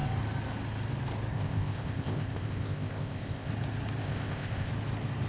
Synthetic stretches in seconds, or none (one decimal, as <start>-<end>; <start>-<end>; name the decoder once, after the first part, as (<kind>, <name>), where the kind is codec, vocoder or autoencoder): 1.3-3.5 (codec, ZipCodec); 4.0-4.7